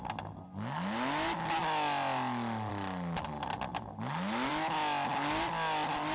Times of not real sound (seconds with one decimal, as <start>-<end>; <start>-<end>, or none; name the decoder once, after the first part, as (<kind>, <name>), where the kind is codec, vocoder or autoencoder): none